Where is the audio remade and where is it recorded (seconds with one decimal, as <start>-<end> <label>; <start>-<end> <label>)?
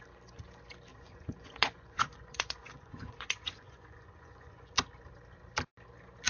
0.0-0.9 recorded; 0.9-4.7 remade; 4.7-6.3 recorded